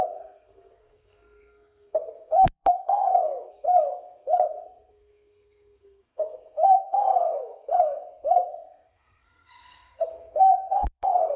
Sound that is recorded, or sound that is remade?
remade